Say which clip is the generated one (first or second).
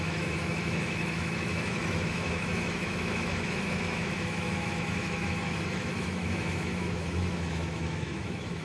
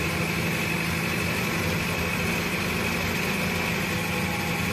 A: first